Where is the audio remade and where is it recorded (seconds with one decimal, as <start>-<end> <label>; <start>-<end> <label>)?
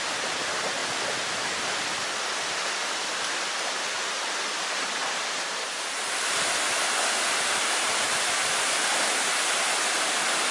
0.0-10.5 recorded